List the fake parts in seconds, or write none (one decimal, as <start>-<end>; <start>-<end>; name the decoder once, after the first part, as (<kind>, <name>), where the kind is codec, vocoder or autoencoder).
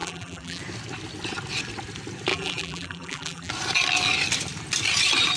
0.0-0.6 (vocoder, BigVGAN v2); 2.3-3.5